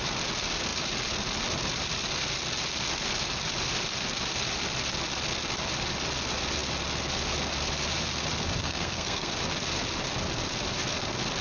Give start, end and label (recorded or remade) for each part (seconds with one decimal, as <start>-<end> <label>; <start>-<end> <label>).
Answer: 0.0-8.6 recorded; 8.6-9.3 remade; 9.3-11.4 recorded